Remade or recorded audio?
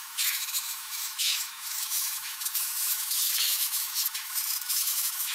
remade